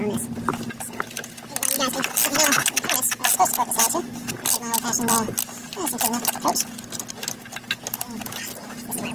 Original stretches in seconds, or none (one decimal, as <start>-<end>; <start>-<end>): 0.0-9.1